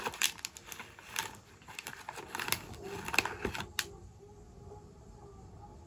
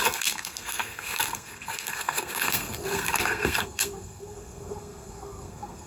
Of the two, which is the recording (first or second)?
first